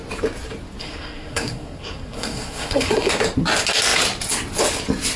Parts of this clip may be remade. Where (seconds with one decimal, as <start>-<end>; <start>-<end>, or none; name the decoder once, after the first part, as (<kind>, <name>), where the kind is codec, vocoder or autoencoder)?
0.8-3.1 (codec, SNAC)